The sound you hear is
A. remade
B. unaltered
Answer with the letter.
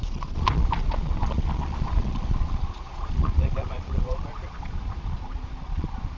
A